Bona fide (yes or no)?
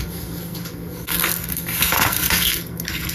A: no